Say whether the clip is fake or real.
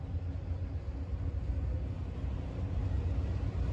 real